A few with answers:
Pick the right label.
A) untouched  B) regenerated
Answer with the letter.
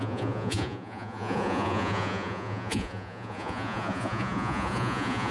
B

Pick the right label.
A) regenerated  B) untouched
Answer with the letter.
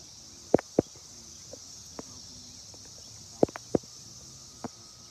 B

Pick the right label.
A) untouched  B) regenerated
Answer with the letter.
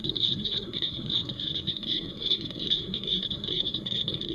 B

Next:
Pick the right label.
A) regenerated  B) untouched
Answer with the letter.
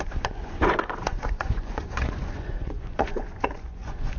A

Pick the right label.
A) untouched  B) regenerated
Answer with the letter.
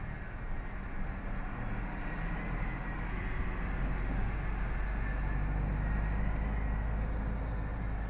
A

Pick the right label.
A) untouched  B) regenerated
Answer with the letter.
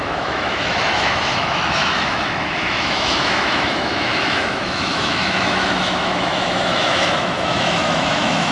B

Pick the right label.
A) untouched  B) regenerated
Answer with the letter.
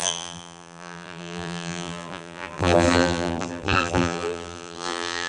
B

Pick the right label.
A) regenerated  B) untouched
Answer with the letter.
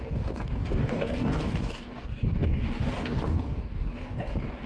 A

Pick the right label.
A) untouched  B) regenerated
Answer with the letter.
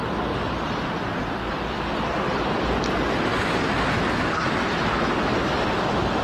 A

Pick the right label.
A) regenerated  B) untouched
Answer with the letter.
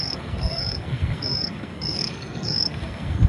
A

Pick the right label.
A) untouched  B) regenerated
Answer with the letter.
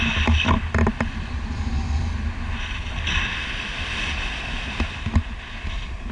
A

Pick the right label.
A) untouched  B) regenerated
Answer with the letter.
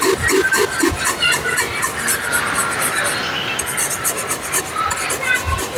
A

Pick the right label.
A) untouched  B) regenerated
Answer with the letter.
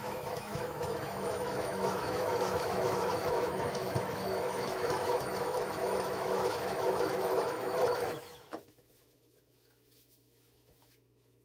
B